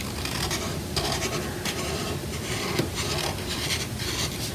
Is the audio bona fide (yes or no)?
yes